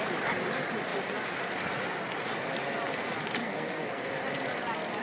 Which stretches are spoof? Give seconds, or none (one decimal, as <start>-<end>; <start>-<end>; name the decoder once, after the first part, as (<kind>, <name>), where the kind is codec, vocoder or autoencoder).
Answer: 3.4-4.1 (codec, SNAC)